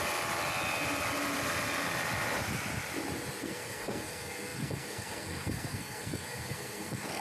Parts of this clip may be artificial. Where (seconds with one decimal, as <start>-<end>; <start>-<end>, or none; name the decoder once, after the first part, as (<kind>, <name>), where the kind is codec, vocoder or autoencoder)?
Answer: 3.4-7.2 (codec, SNAC)